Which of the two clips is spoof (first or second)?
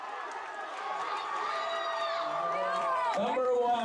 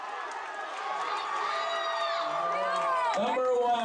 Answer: first